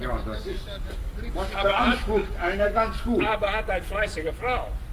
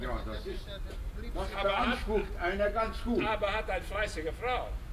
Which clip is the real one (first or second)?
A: second